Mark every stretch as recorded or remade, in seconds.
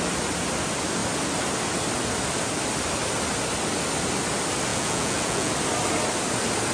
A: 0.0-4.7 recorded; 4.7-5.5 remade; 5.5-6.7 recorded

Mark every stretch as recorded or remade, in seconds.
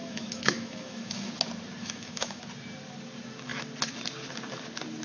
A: 0.0-1.3 remade; 1.3-1.8 recorded; 1.8-2.4 remade; 2.4-5.0 recorded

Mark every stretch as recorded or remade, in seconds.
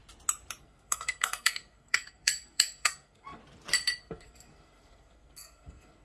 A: 0.0-0.6 recorded; 0.6-3.4 remade; 3.4-4.0 recorded; 4.0-6.0 remade